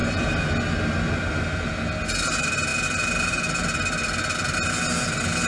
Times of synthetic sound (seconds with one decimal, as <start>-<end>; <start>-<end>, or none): none